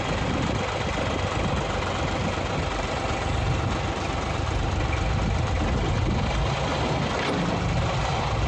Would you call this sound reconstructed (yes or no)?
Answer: no